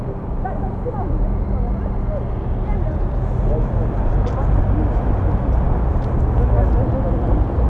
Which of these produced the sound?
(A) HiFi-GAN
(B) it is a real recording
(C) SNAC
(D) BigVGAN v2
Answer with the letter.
B